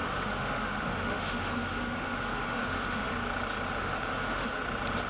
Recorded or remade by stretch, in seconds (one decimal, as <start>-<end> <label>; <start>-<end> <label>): 0.0-3.1 remade; 3.1-3.8 recorded; 3.8-4.6 remade; 4.6-5.1 recorded